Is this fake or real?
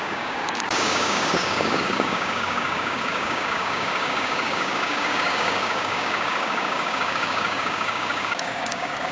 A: fake